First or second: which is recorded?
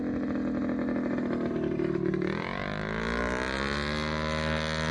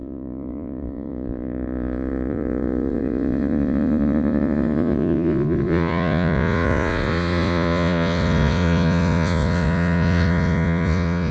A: first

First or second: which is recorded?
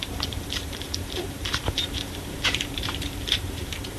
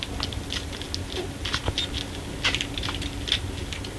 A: second